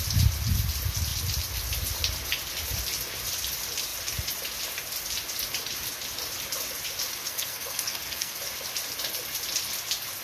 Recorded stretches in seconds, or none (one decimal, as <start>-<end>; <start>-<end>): 0.0-7.2; 8.4-10.2